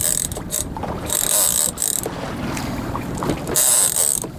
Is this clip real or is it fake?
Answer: real